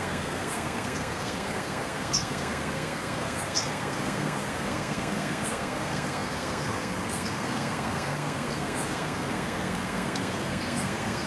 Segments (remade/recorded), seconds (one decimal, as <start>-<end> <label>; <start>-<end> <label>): 0.0-11.3 remade